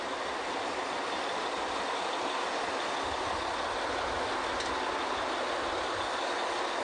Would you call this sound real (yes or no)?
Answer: yes